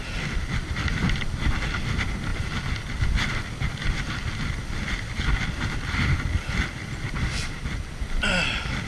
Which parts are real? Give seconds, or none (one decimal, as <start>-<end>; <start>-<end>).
0.0-8.9